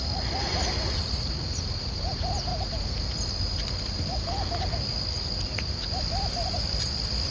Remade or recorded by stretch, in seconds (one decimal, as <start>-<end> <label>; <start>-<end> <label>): 0.0-7.3 recorded